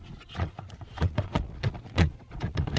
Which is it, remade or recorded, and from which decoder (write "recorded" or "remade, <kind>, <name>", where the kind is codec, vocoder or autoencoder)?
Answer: remade, vocoder, Vocos